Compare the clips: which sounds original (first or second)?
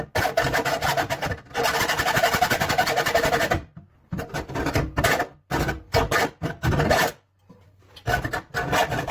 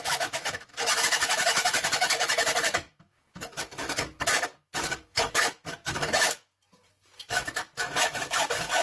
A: first